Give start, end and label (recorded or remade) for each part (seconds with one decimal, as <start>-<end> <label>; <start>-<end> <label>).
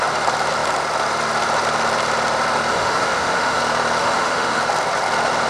0.0-2.7 recorded; 2.7-3.6 remade; 3.6-4.0 recorded; 4.0-4.6 remade; 4.6-5.5 recorded